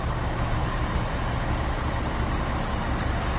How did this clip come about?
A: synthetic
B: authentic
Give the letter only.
B